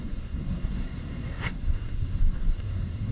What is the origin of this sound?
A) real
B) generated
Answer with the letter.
B